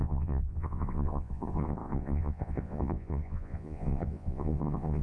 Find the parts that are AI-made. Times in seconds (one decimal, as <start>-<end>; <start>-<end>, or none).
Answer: 0.0-5.0